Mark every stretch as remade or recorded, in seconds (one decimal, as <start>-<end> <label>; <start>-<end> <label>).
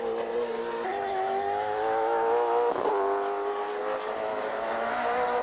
0.0-0.9 recorded; 0.9-2.9 remade; 2.9-4.3 recorded; 4.3-4.9 remade; 4.9-5.4 recorded